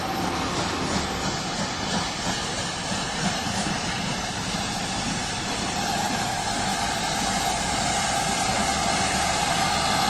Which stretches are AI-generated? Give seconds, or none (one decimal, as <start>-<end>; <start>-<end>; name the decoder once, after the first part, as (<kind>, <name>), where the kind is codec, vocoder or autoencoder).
none